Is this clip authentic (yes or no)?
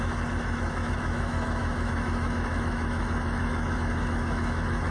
no